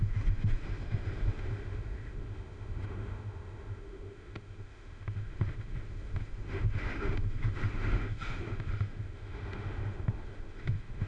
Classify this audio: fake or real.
fake